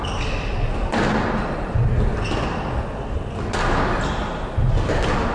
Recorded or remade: recorded